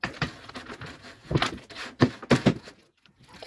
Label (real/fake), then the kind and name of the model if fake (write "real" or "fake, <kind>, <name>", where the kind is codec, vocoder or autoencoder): real